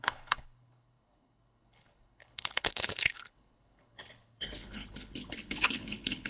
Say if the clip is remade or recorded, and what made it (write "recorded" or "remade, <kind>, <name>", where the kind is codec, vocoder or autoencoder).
remade, codec, HILCodec